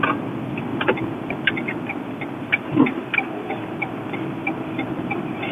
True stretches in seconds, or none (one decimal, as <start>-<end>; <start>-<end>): 0.0-0.7; 1.3-3.0; 3.9-4.4